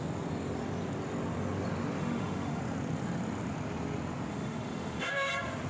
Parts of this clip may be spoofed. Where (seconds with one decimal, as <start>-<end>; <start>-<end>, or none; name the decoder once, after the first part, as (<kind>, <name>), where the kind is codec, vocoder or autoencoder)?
2.0-2.6 (autoencoder, DAC-VAE); 4.3-5.3

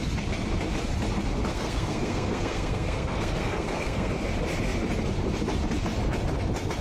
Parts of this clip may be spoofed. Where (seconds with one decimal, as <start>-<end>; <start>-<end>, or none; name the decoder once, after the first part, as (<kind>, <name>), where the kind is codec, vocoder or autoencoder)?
1.5-4.1 (codec, SNAC)